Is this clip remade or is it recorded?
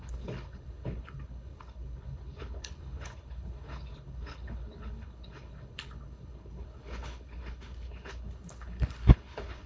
remade